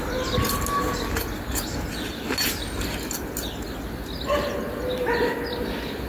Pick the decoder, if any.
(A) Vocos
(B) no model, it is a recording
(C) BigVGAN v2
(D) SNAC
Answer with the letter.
B